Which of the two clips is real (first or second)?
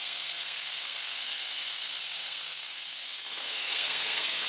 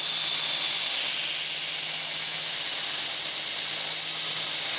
second